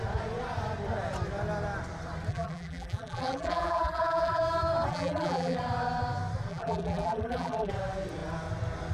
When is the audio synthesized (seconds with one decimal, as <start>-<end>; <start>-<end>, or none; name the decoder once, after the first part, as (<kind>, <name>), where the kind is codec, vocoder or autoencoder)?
2.3-4.4 (vocoder, BigVGAN v2); 4.9-5.6; 6.5-7.7

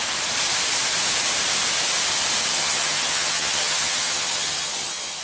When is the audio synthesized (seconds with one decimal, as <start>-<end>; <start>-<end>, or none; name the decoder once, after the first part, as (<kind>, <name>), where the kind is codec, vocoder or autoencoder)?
2.5-5.2 (vocoder, HiFi-GAN)

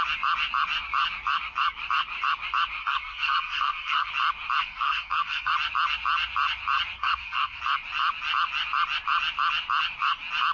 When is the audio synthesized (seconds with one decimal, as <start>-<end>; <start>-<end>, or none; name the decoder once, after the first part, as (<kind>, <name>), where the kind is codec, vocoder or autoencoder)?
2.8-4.1 (codec, SNAC); 4.6-5.5; 7.0-7.6